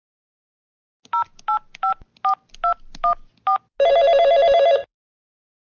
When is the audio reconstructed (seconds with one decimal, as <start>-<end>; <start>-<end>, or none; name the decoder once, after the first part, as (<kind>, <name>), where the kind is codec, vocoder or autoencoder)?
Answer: none